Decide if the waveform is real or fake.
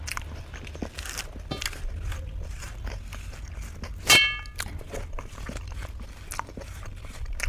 real